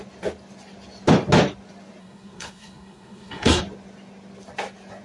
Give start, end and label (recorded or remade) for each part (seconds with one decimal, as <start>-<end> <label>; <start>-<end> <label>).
0.0-2.0 recorded; 2.0-3.6 remade; 3.6-5.0 recorded